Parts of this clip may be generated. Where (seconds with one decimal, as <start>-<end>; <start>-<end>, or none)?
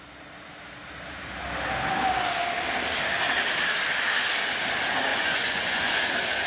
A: 5.1-6.0